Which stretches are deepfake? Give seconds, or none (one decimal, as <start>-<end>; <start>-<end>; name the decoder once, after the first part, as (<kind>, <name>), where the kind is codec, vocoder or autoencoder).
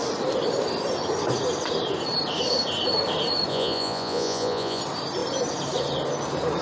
3.5-4.8 (vocoder, Vocos)